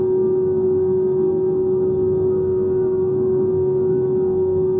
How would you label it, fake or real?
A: fake